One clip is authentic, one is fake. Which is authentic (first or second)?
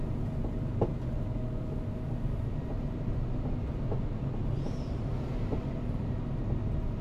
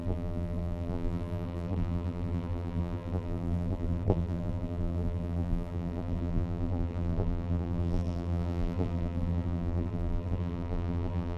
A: first